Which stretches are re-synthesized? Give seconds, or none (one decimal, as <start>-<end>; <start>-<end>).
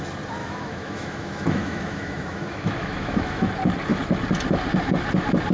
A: 0.4-3.5